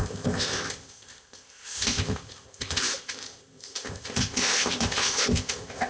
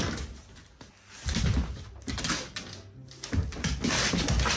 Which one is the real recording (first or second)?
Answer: second